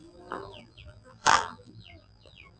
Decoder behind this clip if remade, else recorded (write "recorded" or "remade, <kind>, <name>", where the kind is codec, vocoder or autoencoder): remade, vocoder, BigVGAN v2